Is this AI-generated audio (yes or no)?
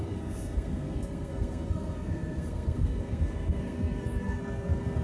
yes